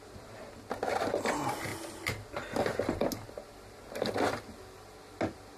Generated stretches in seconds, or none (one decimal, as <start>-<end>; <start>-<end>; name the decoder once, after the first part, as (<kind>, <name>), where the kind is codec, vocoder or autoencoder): none